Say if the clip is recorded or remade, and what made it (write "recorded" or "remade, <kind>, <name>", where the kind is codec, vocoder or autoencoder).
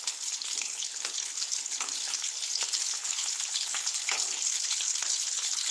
remade, codec, HILCodec